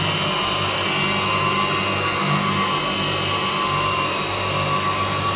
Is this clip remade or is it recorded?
recorded